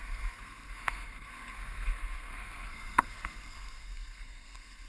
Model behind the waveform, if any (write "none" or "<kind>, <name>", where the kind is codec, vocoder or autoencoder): codec, SNAC